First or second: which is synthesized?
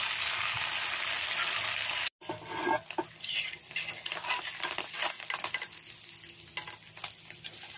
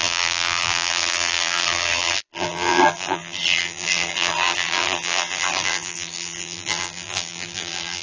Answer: second